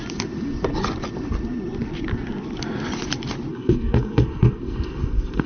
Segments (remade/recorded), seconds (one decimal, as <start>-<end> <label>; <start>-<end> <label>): 0.0-3.5 recorded; 3.5-5.5 remade